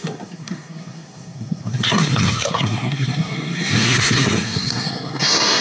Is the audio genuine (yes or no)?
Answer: no